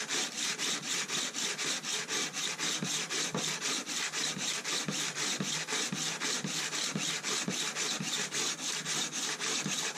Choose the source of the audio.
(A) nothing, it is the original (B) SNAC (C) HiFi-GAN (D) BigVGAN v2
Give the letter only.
D